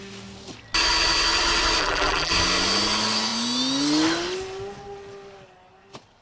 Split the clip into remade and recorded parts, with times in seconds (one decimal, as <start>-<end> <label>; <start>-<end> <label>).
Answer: 0.0-1.8 recorded; 1.8-2.3 remade; 2.3-6.2 recorded